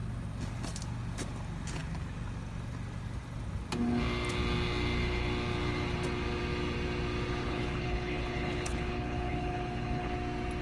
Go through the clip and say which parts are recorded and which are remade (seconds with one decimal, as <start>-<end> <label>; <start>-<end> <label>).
0.0-7.4 recorded; 7.4-10.1 remade; 10.1-10.6 recorded